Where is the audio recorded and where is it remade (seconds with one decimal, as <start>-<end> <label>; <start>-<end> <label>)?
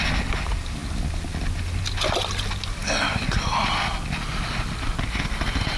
0.0-5.8 recorded